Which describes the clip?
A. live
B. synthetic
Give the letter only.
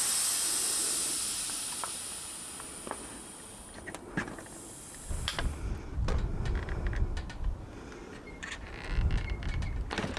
A